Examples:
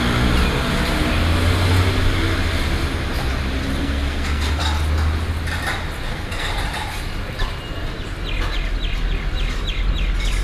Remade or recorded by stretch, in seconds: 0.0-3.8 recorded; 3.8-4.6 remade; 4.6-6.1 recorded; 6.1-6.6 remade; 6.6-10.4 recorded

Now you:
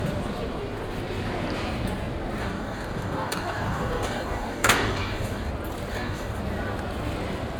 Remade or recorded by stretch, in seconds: 0.0-2.4 recorded; 2.4-5.5 remade; 5.5-5.9 recorded; 5.9-6.4 remade; 6.4-7.6 recorded